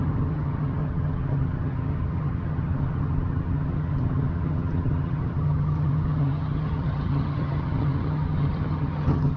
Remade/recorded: remade